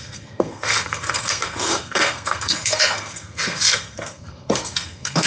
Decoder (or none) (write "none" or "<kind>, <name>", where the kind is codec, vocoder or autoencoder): codec, SNAC